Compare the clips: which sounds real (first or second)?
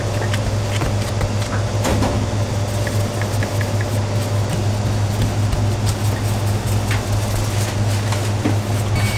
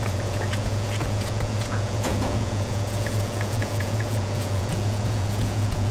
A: first